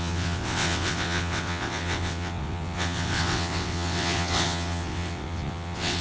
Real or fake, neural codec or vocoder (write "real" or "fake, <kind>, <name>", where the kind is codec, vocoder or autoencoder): fake, vocoder, WaveNeXt